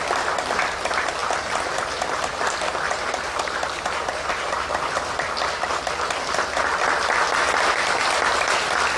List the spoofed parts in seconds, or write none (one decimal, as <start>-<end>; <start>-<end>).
1.2-4.3